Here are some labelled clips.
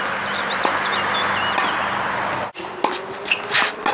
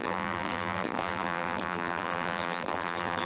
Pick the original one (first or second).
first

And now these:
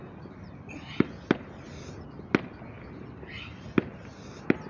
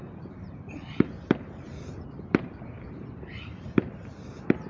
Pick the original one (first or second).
first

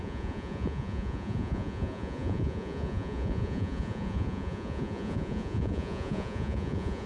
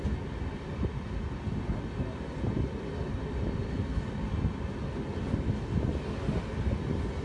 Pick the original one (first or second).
second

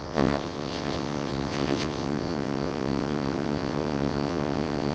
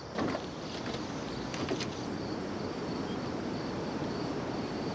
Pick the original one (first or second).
second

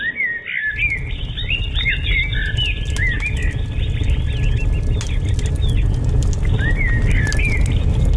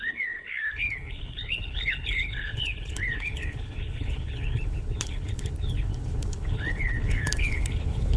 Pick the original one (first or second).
first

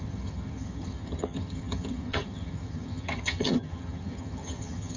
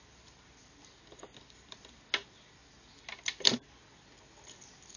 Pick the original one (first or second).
second